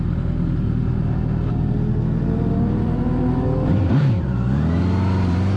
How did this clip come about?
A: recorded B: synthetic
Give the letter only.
A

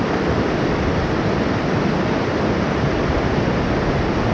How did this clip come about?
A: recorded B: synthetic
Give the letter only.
A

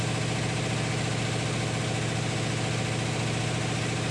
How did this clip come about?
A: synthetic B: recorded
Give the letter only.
B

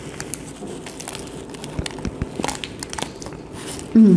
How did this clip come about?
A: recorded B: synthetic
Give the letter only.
A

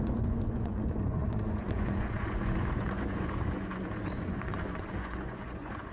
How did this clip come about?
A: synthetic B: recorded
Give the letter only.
A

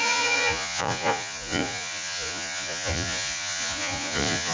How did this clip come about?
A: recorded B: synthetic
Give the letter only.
B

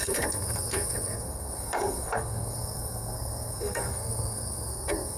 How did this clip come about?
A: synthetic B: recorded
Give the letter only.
A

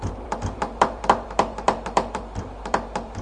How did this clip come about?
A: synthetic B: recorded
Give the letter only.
A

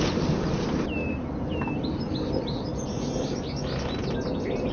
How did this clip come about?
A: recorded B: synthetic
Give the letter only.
A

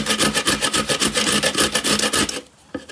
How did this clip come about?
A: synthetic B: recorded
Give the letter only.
B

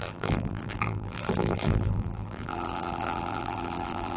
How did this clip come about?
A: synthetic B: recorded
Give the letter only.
A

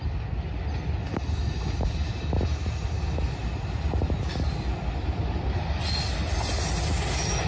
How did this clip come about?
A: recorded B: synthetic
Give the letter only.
A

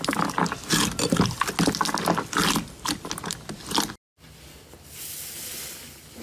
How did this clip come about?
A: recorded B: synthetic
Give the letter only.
A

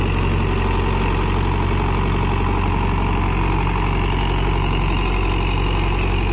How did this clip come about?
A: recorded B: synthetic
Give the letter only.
A